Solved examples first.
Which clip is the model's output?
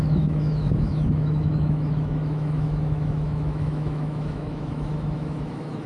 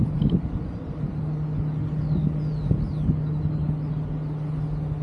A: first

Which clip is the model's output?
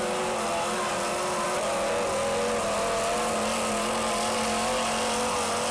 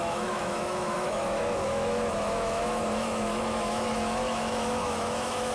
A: second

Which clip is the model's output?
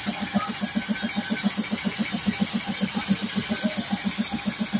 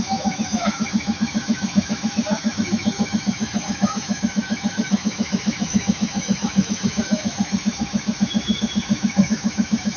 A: second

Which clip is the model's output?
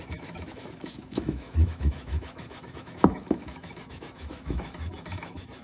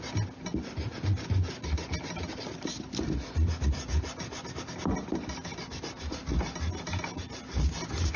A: first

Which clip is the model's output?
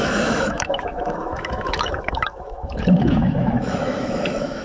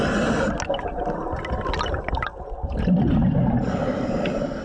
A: first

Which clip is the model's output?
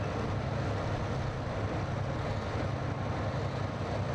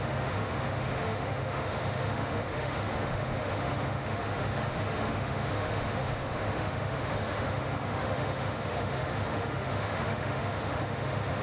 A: second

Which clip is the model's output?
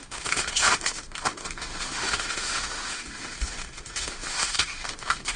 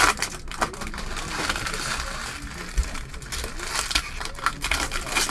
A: first